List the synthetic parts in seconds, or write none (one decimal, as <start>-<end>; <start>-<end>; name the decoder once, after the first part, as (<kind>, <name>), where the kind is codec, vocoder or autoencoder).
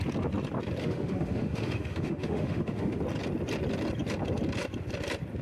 0.8-3.0 (autoencoder, DAC-VAE)